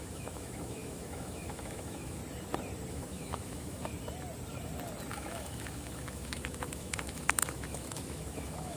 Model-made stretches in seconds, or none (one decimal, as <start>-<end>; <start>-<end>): 0.0-2.2; 2.9-3.9; 5.1-8.8